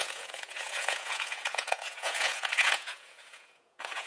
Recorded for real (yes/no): no